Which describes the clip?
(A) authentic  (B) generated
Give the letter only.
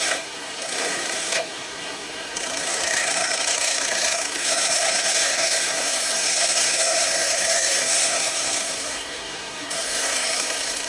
B